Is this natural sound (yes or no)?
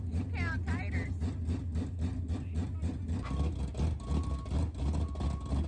yes